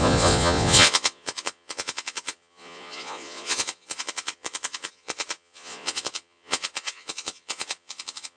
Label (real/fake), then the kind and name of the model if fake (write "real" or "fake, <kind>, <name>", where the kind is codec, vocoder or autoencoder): fake, vocoder, Vocos